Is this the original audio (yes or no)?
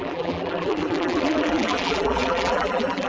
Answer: no